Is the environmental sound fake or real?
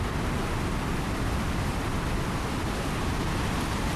real